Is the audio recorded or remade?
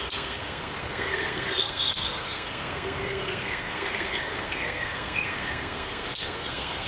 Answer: remade